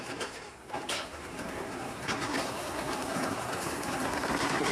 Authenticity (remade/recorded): remade